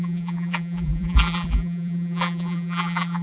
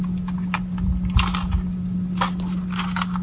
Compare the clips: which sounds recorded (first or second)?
second